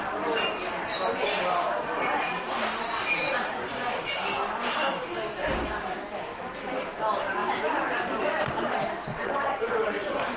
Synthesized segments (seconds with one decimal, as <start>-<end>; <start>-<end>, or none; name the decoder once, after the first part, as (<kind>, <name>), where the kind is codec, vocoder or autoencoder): 9.1-10.0 (vocoder, WaveNeXt)